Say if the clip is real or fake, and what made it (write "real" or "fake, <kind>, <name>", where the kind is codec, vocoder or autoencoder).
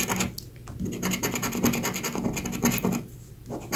real